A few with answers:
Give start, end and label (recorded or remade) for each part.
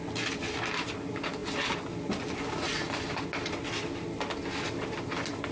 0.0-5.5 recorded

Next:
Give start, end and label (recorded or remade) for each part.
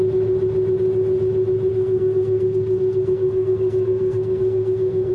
0.0-1.7 recorded; 1.7-5.1 remade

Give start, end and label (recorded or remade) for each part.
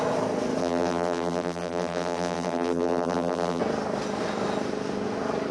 0.0-0.6 recorded; 0.6-3.6 remade; 3.6-5.5 recorded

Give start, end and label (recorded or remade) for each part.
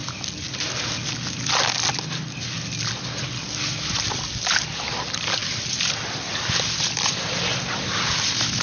0.0-8.6 recorded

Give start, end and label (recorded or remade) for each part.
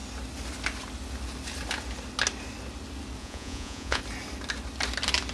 0.0-3.2 recorded; 3.2-4.0 remade; 4.0-5.3 recorded